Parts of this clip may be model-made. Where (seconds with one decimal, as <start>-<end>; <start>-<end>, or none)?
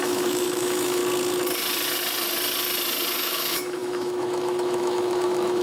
0.0-1.0; 3.2-5.6